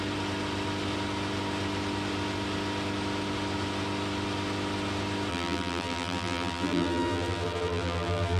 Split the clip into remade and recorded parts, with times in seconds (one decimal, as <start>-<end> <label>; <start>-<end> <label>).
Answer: 0.0-5.3 recorded; 5.3-8.4 remade